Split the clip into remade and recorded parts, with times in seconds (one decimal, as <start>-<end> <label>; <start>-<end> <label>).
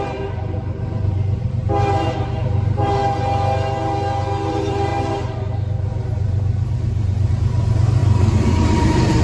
0.0-3.0 remade; 3.0-4.5 recorded; 4.5-9.2 remade